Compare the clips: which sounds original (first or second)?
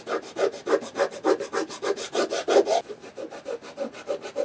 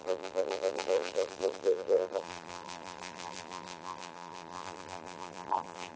first